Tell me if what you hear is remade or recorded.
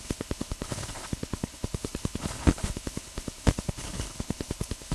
remade